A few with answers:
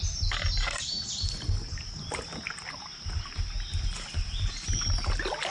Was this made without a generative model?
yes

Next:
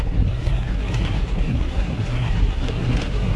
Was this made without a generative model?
no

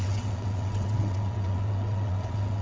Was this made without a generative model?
no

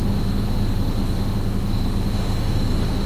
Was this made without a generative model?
no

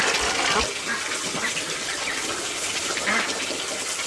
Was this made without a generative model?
yes